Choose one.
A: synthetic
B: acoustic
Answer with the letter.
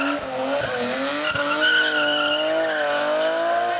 B